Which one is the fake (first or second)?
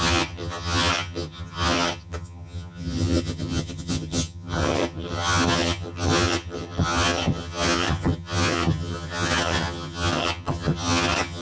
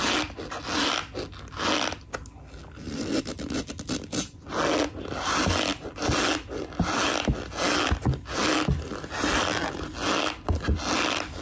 first